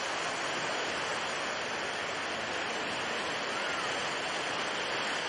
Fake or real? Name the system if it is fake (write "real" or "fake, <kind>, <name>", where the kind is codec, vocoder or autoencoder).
real